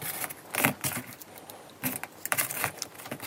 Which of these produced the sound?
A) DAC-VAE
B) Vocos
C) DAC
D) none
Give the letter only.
D